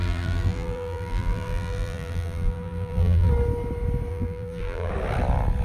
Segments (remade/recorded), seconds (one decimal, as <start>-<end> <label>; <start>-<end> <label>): 0.0-3.3 remade; 3.3-4.1 recorded; 4.1-4.9 remade; 4.9-5.6 recorded